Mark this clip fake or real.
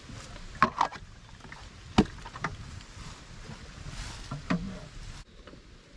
real